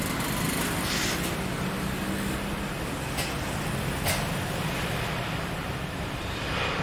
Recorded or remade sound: recorded